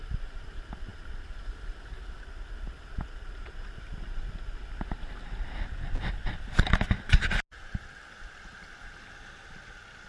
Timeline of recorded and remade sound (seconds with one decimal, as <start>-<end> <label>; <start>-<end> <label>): 0.0-10.1 recorded